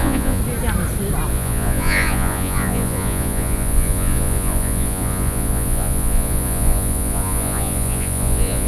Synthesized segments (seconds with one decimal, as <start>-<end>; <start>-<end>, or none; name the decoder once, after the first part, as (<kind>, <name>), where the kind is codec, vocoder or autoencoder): 0.0-0.4 (vocoder, Vocos); 1.3-8.7